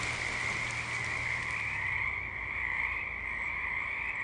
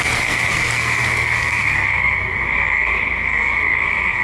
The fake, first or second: second